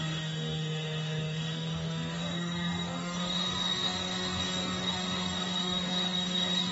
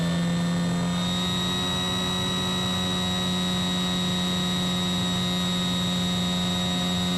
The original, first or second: second